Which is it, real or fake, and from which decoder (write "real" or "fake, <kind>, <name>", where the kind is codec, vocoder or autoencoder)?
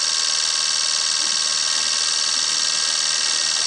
real